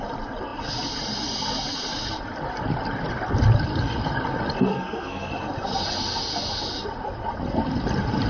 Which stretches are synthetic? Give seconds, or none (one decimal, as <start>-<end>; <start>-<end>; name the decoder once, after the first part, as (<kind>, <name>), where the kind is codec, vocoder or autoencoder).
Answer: 4.7-5.3 (codec, SNAC)